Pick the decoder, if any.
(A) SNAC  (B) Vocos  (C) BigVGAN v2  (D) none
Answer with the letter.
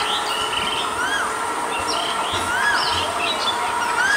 D